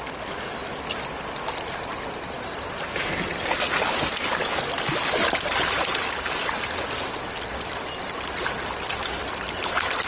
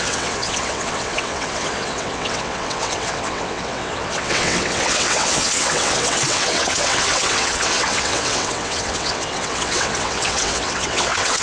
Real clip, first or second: first